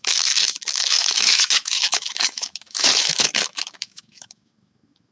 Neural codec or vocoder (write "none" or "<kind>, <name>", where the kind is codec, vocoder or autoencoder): autoencoder, DAC-VAE